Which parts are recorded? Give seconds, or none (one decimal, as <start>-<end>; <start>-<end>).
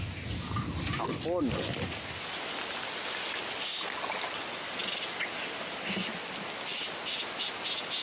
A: 0.0-8.0